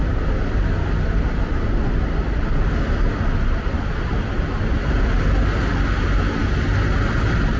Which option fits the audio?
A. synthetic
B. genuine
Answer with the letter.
B